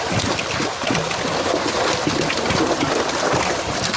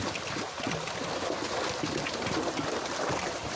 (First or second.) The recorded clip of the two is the first